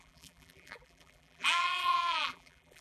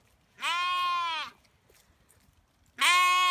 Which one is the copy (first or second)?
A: first